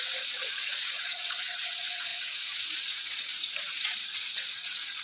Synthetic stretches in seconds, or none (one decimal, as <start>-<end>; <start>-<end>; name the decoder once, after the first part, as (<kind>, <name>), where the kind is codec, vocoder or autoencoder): 0.0-5.0 (vocoder, Vocos)